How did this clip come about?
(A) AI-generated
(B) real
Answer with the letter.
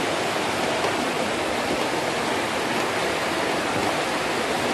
B